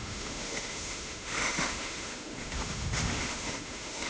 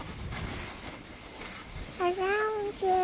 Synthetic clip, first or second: first